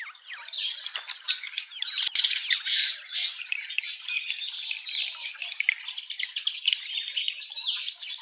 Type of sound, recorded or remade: recorded